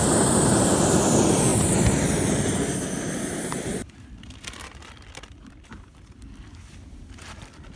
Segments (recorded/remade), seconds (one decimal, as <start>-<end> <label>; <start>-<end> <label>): 0.0-7.8 recorded